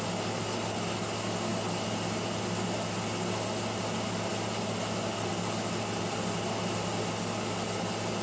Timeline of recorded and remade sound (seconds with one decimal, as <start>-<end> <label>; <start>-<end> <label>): 0.0-8.2 recorded